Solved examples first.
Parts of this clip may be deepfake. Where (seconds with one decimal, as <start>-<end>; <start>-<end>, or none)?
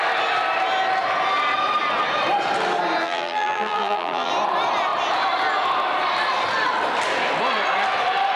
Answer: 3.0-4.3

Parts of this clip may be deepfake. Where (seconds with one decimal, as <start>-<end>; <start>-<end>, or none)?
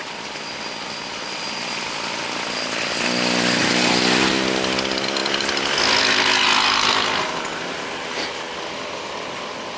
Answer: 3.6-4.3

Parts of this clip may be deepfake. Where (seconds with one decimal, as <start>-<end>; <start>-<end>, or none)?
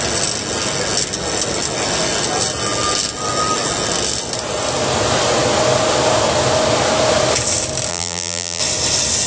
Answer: 7.9-8.6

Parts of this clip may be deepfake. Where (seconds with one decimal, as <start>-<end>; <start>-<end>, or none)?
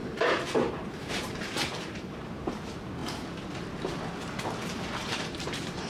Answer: 0.0-2.5; 5.0-5.9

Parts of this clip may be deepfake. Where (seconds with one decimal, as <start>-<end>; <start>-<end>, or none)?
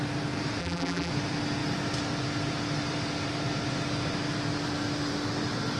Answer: 0.6-1.1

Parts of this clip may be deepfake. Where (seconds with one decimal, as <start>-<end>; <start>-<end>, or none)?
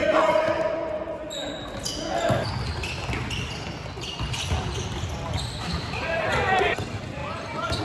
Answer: 4.3-7.8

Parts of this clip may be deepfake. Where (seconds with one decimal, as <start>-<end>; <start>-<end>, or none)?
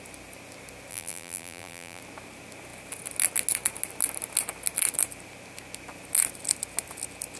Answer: 0.9-2.0